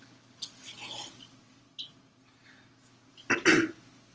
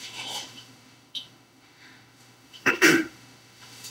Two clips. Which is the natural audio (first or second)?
first